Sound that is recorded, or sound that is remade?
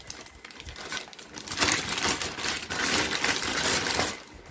recorded